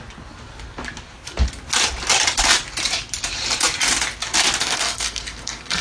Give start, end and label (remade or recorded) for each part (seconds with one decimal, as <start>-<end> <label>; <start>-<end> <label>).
0.0-4.6 recorded; 4.6-5.8 remade